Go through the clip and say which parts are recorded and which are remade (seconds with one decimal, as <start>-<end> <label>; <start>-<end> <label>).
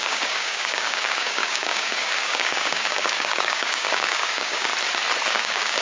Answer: 0.0-4.7 remade; 4.7-5.3 recorded; 5.3-5.8 remade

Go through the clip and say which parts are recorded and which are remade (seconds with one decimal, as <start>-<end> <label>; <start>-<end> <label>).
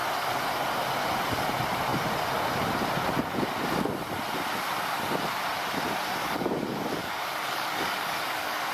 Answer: 0.0-6.2 recorded; 6.2-8.7 remade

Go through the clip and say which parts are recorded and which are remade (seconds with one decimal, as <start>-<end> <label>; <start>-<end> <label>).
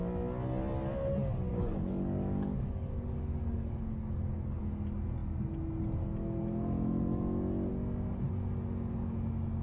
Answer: 0.0-1.5 recorded; 1.5-4.6 remade; 4.6-9.6 recorded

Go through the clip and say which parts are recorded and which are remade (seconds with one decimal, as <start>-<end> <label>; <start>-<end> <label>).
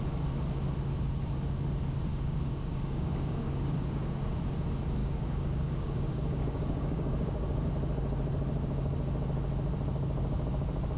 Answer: 0.0-2.1 recorded; 2.1-4.4 remade; 4.4-5.0 recorded; 5.0-7.7 remade; 7.7-11.0 recorded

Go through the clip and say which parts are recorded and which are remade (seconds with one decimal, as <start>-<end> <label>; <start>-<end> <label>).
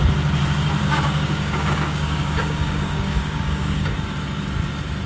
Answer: 0.0-0.8 recorded; 0.8-3.9 remade; 3.9-5.1 recorded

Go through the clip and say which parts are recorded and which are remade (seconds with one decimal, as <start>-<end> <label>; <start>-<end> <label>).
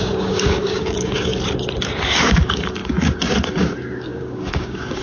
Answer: 0.0-1.3 remade; 1.3-2.2 recorded; 2.2-5.0 remade